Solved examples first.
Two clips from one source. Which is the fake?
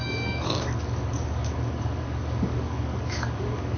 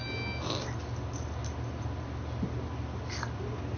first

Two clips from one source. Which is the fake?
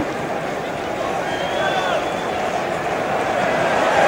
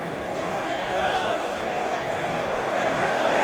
second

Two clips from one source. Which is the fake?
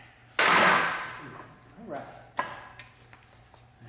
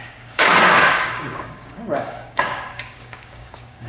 second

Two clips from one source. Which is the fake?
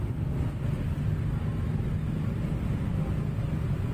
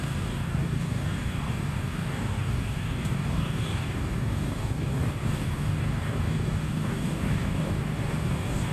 second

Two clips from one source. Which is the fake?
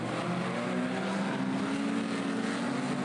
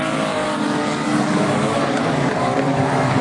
second